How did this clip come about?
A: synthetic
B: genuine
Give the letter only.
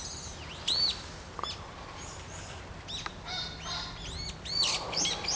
B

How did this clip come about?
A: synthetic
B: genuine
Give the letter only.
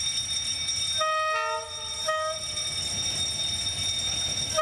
B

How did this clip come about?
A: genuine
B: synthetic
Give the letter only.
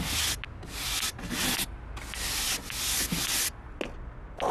A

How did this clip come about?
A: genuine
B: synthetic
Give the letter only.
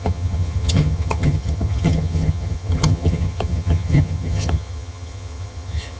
B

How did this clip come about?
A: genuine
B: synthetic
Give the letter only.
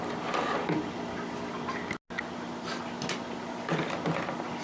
A